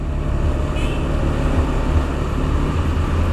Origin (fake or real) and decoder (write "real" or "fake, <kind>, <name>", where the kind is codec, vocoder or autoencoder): real